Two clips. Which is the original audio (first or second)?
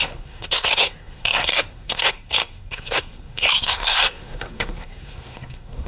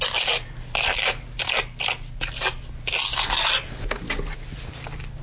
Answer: second